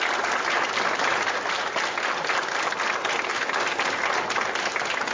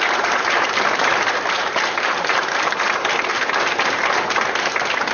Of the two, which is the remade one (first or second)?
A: second